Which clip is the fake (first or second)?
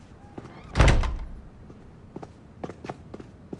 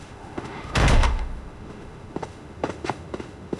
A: second